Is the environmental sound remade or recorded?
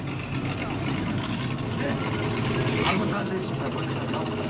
recorded